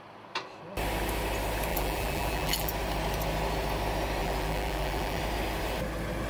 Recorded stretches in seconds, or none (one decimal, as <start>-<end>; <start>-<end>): 0.0-1.7; 2.7-4.2; 5.2-6.3